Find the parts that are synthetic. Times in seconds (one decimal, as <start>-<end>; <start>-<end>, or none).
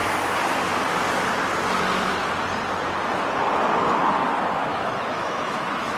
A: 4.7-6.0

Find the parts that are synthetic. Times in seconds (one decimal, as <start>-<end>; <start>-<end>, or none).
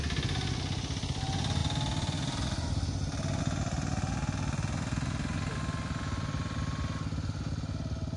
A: none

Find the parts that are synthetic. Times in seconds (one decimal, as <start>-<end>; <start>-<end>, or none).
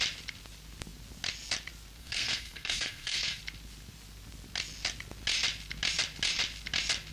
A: 2.0-3.4